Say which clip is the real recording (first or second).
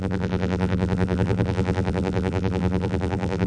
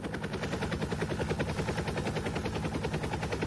second